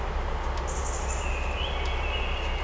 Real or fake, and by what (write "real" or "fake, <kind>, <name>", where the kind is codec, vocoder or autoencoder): real